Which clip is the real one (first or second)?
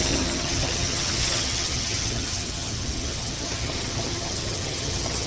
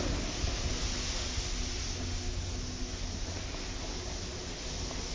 second